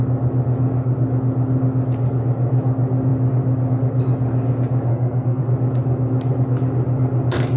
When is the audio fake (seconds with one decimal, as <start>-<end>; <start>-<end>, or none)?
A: 4.9-5.4